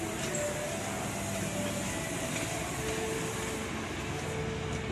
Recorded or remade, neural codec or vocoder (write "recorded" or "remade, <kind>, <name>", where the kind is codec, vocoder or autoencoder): recorded